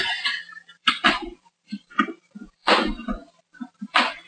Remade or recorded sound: remade